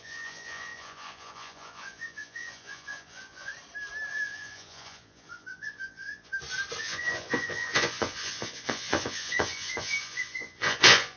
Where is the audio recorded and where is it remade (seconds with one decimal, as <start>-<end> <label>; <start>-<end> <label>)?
0.0-3.5 remade; 3.5-4.1 recorded; 4.1-6.3 remade; 6.3-6.8 recorded; 6.8-11.2 remade